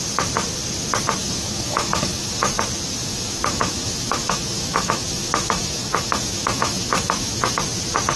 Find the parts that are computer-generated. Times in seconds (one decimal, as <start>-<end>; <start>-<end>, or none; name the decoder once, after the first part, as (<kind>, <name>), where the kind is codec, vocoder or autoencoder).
1.2-2.4 (autoencoder, DAC-VAE); 3.0-7.6